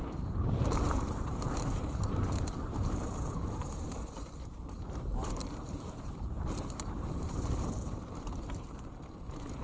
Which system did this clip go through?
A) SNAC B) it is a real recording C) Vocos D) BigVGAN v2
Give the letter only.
D